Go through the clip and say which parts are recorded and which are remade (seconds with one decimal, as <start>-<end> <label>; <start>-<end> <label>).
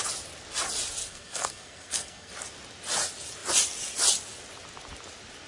0.0-1.0 recorded; 1.0-2.3 remade; 2.3-5.5 recorded